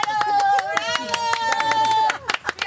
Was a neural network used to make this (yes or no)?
no